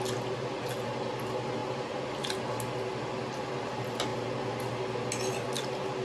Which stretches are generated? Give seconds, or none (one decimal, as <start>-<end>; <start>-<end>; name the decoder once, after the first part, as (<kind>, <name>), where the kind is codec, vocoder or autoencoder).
none